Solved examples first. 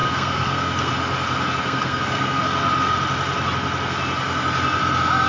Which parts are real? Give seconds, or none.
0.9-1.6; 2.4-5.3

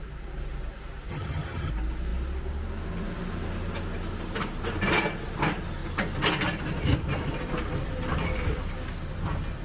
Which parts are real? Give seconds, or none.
0.0-1.1; 1.7-9.6

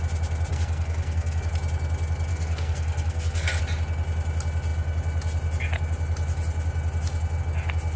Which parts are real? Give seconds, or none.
0.0-0.5; 1.5-2.3; 3.6-8.0

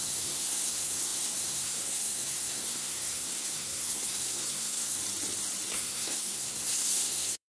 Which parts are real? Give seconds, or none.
5.0-5.7